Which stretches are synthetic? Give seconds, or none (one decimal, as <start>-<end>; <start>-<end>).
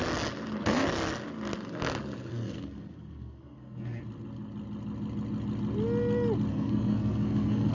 2.3-4.0; 6.5-7.7